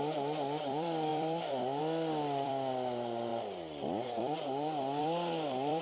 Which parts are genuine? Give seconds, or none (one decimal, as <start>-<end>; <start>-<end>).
none